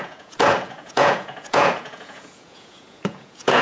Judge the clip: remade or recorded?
remade